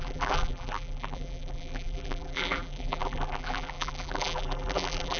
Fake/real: fake